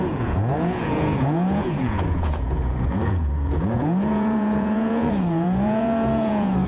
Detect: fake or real fake